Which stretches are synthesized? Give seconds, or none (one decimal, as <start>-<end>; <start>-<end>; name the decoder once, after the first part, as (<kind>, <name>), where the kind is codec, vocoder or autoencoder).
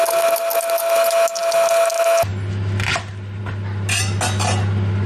none